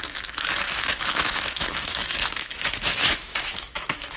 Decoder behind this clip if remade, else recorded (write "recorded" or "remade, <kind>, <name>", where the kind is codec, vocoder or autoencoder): remade, autoencoder, DAC-VAE